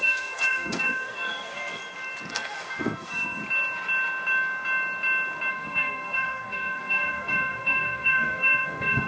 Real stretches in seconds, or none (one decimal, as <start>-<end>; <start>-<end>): 1.8-2.3; 3.4-5.5